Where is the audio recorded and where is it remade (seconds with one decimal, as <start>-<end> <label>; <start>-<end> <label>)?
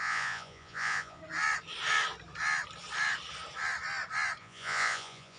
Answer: 0.0-1.2 remade; 1.2-4.4 recorded; 4.4-5.4 remade